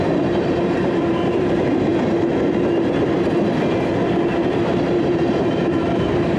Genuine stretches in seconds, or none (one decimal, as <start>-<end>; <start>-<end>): 1.9-4.8